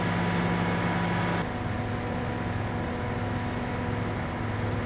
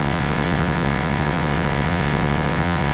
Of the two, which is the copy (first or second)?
second